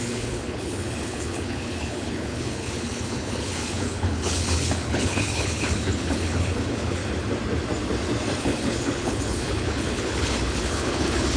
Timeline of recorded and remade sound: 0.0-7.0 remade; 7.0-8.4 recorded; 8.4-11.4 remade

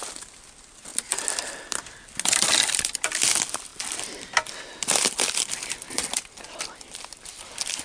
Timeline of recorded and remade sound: 0.0-7.8 recorded

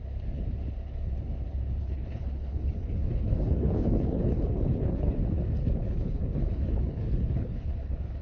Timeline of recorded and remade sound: 0.0-1.8 recorded; 1.8-5.1 remade; 5.1-5.6 recorded; 5.6-8.2 remade

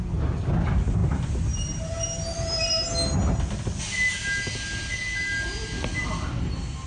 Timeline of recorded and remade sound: 0.0-6.9 recorded

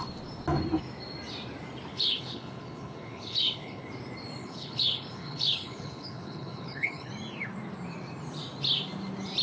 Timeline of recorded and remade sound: 0.0-1.9 recorded; 1.9-3.9 remade; 3.9-4.4 recorded; 4.4-7.1 remade; 7.1-9.4 recorded

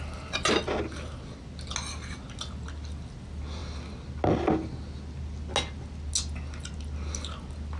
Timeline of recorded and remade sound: 0.0-7.8 recorded

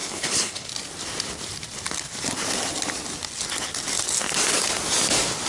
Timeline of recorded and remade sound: 0.0-0.7 remade; 0.7-5.5 recorded